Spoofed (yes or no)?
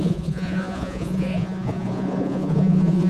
yes